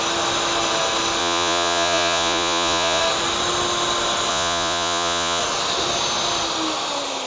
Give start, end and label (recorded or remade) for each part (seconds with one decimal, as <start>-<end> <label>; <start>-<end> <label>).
0.0-1.2 recorded; 1.2-3.0 remade; 3.0-4.3 recorded; 4.3-5.4 remade; 5.4-7.3 recorded